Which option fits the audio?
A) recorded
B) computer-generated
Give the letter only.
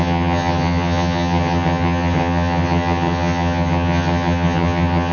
B